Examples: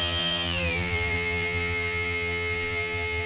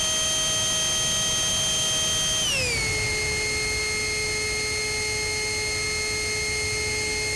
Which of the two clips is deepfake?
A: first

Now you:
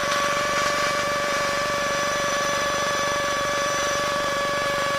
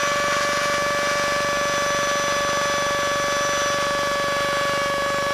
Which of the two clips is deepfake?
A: first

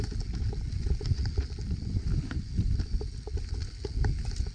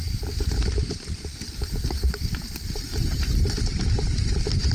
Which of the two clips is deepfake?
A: second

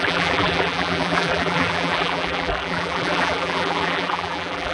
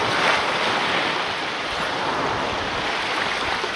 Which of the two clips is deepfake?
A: first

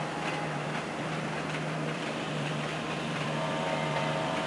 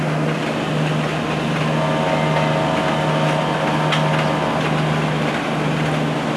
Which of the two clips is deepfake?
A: first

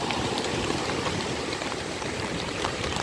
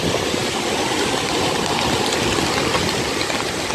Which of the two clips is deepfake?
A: first